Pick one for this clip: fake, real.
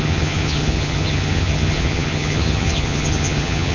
fake